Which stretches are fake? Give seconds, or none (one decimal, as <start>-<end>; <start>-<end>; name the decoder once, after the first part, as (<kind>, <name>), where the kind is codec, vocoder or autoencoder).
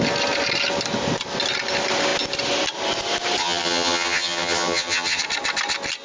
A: 3.4-5.2 (vocoder, HiFi-GAN)